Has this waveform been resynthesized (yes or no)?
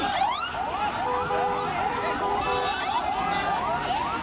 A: no